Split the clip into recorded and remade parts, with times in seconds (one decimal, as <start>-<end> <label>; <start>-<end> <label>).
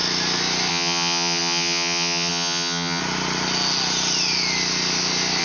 0.0-0.7 recorded; 0.7-3.0 remade; 3.0-5.4 recorded